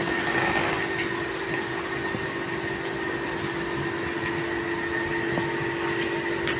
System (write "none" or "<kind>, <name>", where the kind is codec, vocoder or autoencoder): none